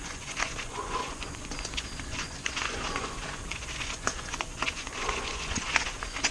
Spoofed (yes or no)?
yes